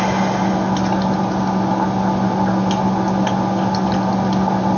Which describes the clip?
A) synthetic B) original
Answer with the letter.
B